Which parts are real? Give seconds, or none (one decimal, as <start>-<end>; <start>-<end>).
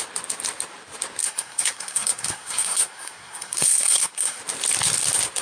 0.0-1.2; 4.4-5.4